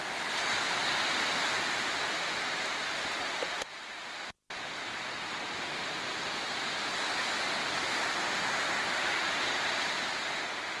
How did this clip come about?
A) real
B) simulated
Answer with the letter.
A